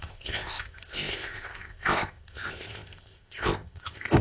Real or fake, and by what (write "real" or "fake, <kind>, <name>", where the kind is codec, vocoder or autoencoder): fake, codec, ZipCodec